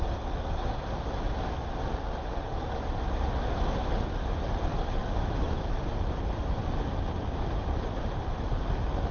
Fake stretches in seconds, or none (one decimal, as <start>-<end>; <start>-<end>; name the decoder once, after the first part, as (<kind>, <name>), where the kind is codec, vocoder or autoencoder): 5.0-5.8 (autoencoder, DAC-VAE)